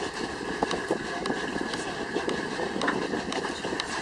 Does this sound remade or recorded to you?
recorded